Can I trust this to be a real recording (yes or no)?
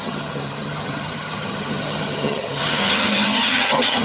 no